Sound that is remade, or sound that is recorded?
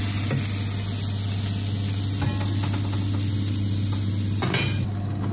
recorded